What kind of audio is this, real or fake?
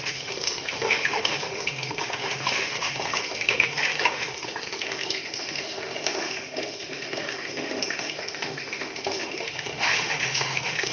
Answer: fake